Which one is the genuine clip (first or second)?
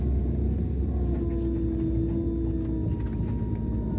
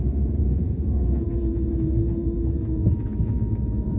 first